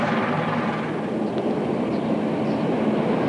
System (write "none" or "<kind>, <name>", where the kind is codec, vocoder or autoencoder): none